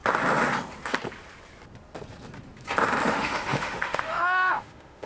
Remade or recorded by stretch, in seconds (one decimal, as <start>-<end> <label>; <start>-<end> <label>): 0.0-3.1 recorded; 3.1-5.1 remade